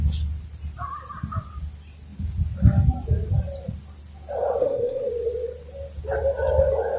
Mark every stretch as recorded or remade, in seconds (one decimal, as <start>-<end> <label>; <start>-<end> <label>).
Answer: 0.0-4.6 recorded; 4.6-5.1 remade; 5.1-7.0 recorded